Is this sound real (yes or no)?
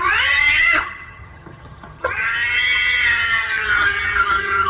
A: no